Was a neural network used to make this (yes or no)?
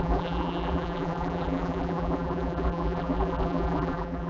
yes